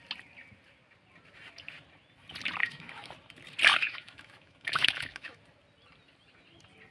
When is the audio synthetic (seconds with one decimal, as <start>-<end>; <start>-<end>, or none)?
2.6-3.1; 3.7-5.4